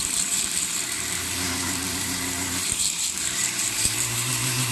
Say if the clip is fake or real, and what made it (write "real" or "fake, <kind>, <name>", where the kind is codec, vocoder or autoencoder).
fake, vocoder, BigVGAN v2